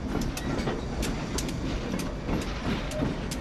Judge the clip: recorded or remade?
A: recorded